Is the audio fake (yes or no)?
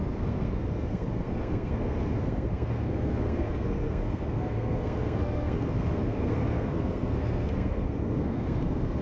yes